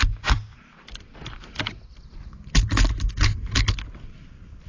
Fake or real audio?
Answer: real